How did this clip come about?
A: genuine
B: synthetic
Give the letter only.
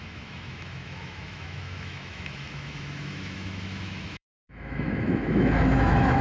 B